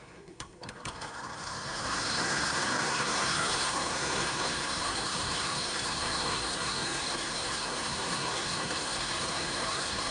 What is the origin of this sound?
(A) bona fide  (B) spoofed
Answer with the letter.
B